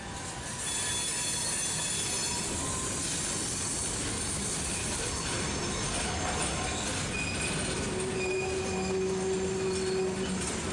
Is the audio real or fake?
real